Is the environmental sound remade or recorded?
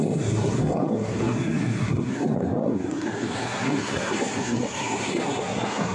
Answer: remade